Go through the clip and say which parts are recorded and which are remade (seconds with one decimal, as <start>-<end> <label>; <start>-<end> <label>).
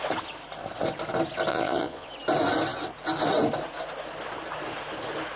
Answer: 0.0-1.5 recorded; 1.5-2.1 remade; 2.1-5.4 recorded